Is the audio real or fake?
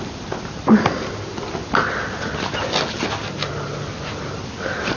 real